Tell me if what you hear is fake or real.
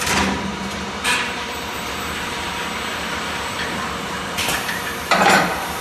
fake